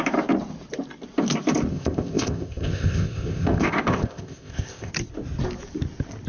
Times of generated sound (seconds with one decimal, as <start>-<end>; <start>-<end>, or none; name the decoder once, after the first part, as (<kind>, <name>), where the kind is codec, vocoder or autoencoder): 1.7-4.9 (codec, ZipCodec)